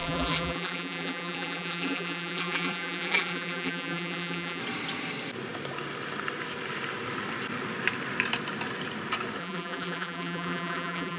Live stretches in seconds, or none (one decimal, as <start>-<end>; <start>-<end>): 4.6-9.4